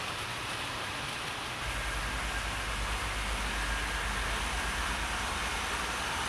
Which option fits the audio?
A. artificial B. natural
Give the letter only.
B